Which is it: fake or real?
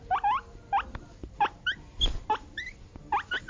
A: real